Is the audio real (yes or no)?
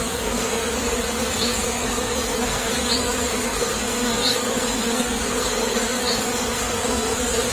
no